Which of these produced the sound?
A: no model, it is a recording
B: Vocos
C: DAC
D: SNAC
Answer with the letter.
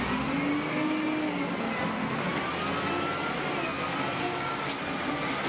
A